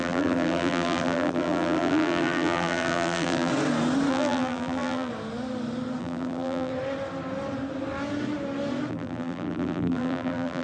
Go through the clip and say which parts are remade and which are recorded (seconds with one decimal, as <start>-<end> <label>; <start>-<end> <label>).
0.0-3.5 remade; 3.5-4.1 recorded; 4.1-5.1 remade; 5.1-6.0 recorded; 6.0-6.7 remade; 6.7-8.9 recorded; 8.9-10.6 remade